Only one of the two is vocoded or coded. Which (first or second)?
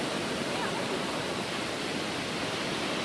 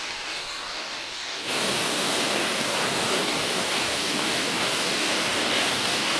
second